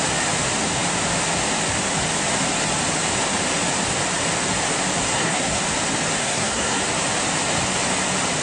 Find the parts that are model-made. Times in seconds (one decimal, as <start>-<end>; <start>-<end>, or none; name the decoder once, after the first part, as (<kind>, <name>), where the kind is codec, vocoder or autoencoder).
5.1-5.6 (codec, SNAC); 6.2-6.8